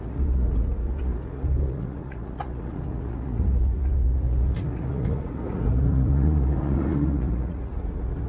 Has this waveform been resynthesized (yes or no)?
yes